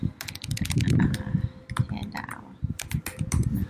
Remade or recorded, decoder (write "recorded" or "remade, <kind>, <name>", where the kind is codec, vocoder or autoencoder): recorded